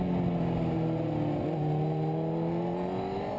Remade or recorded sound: recorded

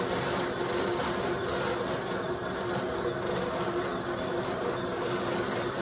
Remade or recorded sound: recorded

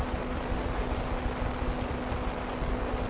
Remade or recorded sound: recorded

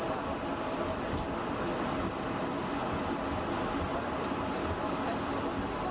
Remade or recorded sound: recorded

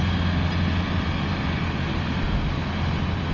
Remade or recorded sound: recorded